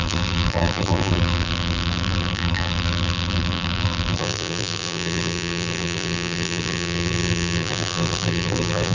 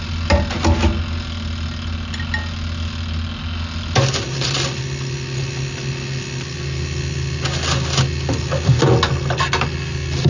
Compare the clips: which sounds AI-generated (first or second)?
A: first